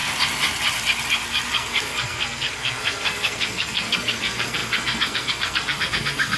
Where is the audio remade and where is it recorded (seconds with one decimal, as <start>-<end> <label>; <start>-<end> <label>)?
0.0-1.5 recorded; 1.5-6.4 remade

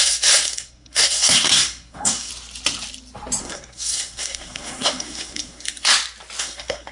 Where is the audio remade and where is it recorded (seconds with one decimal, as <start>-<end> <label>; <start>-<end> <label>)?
0.0-2.3 remade; 2.3-3.4 recorded; 3.4-5.9 remade; 5.9-6.4 recorded; 6.4-6.9 remade

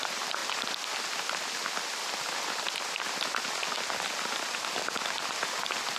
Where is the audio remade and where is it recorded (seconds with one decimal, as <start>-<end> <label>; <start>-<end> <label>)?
0.0-6.0 recorded